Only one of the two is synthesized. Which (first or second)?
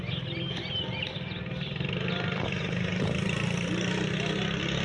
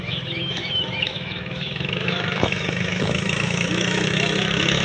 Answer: second